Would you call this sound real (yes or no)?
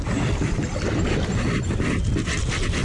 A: yes